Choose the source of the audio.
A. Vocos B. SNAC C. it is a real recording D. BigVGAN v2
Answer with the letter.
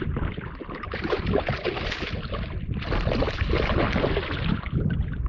C